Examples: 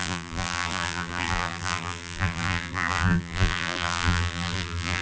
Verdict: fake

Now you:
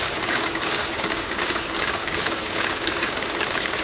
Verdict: fake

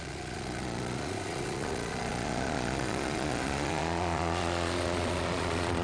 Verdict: fake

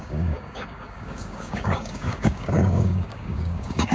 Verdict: fake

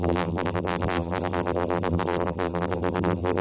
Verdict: fake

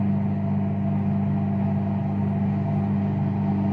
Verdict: real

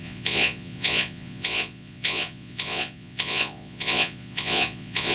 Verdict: fake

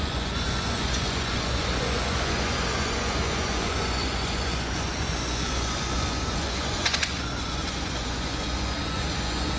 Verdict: fake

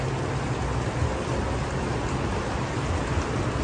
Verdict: real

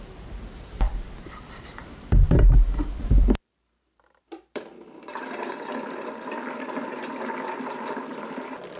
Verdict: fake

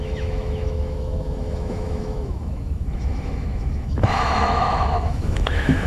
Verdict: fake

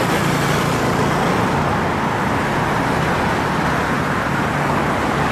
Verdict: real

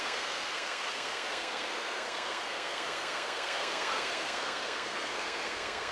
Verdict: fake